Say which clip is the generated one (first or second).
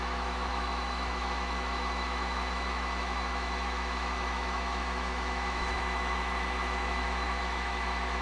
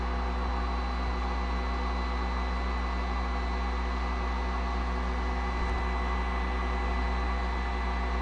first